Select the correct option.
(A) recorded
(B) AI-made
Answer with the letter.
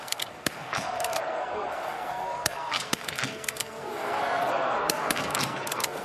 B